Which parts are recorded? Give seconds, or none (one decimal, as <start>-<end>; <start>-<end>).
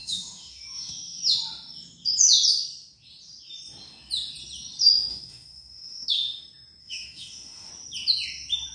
1.2-5.1; 6.1-6.8; 7.7-8.7